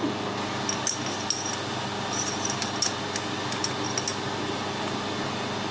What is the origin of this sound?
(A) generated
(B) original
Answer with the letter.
B